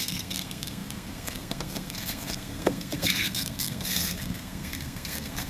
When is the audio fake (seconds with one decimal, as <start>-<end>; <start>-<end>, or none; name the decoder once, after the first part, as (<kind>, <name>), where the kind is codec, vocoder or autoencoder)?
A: 0.0-5.5 (codec, SNAC)